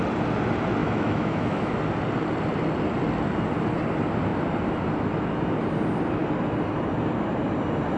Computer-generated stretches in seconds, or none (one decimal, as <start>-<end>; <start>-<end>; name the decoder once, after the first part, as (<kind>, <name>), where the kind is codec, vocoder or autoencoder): 0.8-1.7 (autoencoder, DAC-VAE)